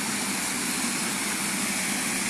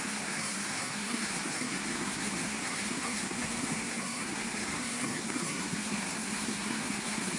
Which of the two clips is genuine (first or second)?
first